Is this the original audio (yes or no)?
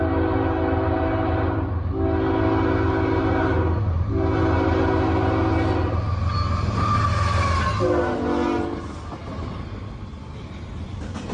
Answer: yes